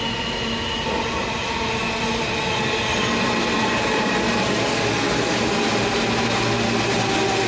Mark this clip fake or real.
real